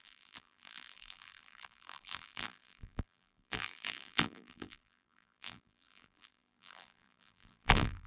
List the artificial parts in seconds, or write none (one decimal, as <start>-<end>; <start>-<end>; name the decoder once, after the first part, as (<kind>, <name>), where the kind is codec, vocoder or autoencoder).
0.0-8.1 (vocoder, BigVGAN v2)